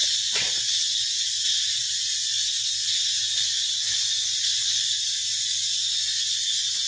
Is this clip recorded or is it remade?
recorded